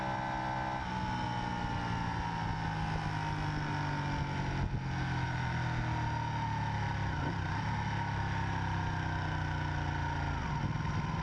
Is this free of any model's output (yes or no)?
yes